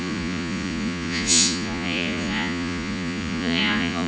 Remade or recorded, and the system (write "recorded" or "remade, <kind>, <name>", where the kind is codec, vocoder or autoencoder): remade, vocoder, Vocos